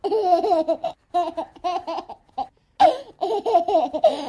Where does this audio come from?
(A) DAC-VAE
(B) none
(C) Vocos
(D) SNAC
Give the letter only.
B